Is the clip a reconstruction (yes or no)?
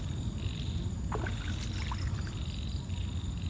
no